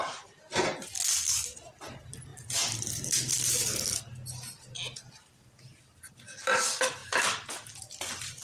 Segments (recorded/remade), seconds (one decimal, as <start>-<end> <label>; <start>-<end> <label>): 0.0-8.4 recorded